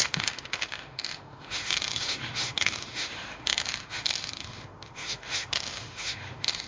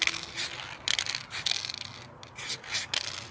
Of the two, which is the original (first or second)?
second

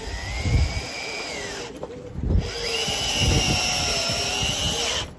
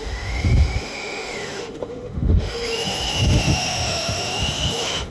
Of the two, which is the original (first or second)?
first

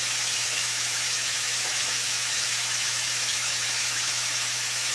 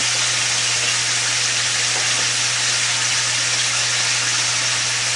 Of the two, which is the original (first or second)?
second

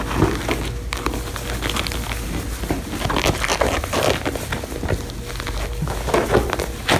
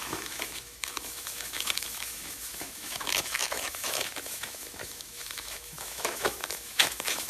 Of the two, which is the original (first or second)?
first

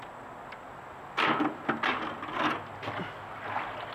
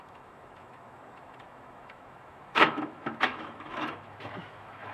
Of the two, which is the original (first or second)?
first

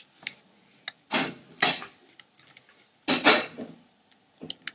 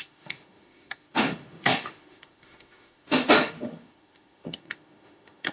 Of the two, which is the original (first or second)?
first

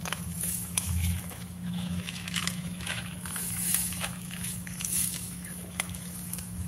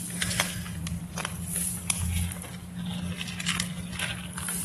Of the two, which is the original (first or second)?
second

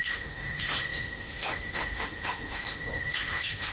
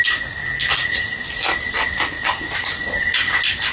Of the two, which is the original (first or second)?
second